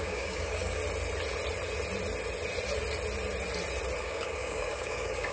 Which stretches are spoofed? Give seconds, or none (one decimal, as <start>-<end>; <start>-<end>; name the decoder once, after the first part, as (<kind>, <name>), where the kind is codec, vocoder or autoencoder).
0.0-0.8 (codec, DAC); 4.0-5.3